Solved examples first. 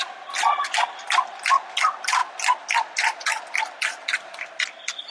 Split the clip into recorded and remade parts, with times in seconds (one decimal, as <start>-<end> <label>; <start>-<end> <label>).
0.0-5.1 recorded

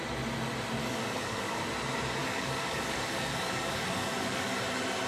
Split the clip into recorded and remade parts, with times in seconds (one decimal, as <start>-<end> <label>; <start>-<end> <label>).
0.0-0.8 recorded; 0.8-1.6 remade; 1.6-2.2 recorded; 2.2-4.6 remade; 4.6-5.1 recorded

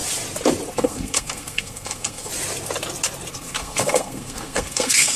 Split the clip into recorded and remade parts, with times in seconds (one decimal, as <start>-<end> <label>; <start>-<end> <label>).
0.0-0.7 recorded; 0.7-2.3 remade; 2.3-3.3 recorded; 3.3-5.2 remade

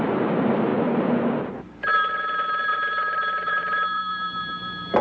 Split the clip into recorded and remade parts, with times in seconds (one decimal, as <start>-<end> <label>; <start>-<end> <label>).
0.0-0.7 remade; 0.7-1.5 recorded; 1.5-1.9 remade; 1.9-2.7 recorded; 2.7-5.0 remade

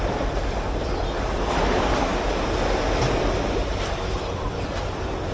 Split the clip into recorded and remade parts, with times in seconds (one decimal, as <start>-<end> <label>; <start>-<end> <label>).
0.0-5.3 recorded